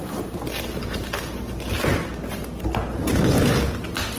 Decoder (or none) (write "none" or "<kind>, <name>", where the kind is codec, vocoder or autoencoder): none